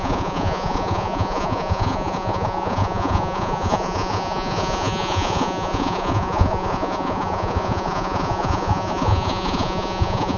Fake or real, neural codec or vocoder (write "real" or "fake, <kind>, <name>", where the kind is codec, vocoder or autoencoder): fake, vocoder, Vocos